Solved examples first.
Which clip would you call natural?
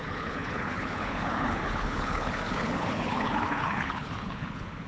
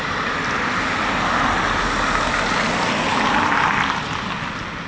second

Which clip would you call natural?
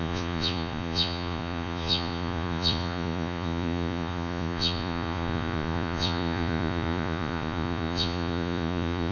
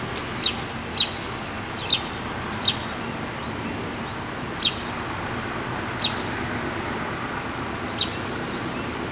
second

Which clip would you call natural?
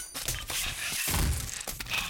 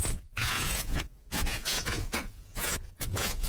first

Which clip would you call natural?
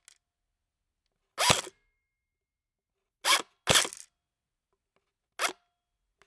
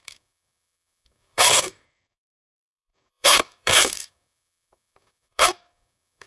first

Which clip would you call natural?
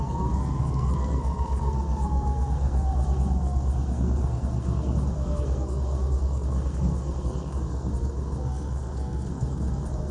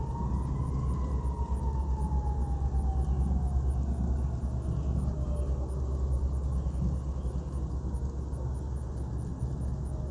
second